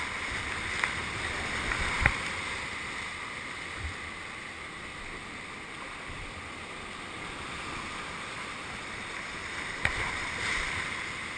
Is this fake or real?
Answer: real